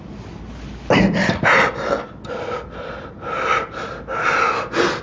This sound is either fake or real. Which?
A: real